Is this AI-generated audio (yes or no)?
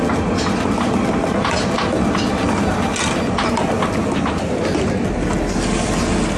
no